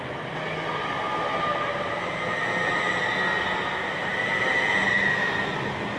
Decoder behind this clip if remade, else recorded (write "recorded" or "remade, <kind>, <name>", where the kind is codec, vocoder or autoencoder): recorded